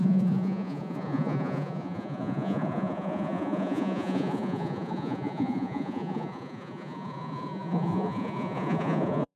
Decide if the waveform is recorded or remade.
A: remade